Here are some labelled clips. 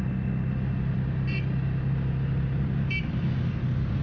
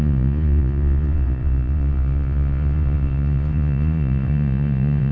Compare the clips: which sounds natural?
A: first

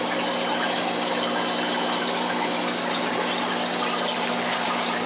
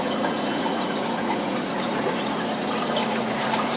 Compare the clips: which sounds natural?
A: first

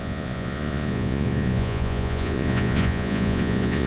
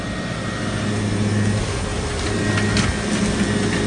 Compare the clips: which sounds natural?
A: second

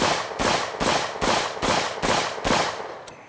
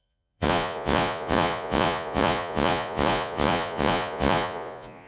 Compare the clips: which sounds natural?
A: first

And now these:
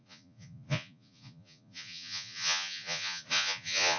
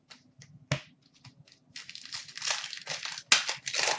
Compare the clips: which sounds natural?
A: second